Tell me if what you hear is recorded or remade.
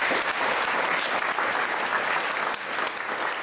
recorded